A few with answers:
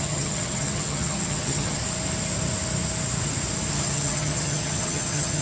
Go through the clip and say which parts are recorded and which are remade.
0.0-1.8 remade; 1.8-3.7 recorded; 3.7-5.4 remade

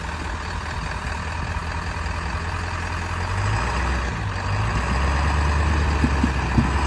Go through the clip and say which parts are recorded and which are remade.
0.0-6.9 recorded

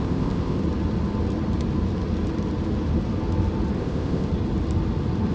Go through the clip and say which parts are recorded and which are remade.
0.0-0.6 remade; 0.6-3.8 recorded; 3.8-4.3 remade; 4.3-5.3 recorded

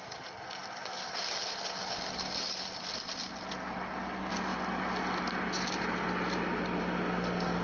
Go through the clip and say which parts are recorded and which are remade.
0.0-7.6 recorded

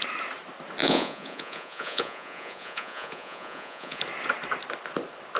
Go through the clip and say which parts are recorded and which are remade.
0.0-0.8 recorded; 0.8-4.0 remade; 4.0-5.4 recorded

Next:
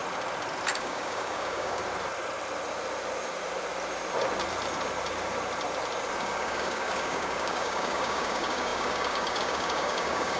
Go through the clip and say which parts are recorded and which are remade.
0.0-0.7 recorded; 0.7-1.8 remade; 1.8-6.2 recorded; 6.2-10.4 remade

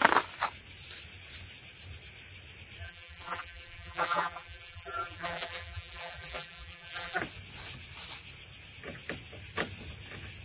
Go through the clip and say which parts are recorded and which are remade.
0.0-2.8 recorded; 2.8-7.2 remade; 7.2-10.4 recorded

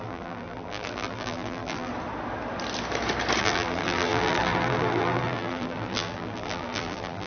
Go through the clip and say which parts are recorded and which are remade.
0.0-1.9 remade; 1.9-3.4 recorded; 3.4-7.3 remade